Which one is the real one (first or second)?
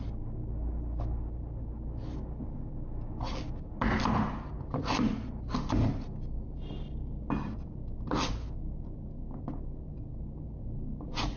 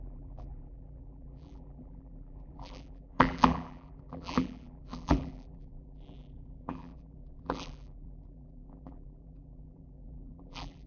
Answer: first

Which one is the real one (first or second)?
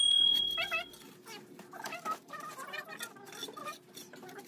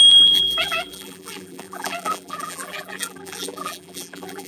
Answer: first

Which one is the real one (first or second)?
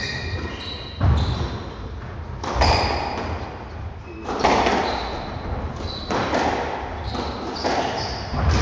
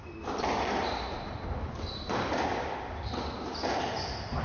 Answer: first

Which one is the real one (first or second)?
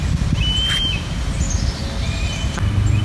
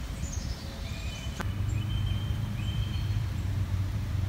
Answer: first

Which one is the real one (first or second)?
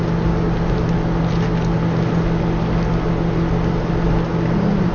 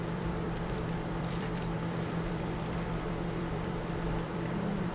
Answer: first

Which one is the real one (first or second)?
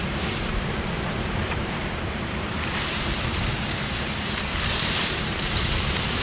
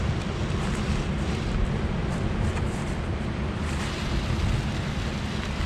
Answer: second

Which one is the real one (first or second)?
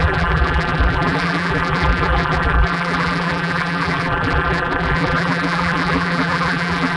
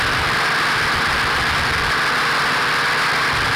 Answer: second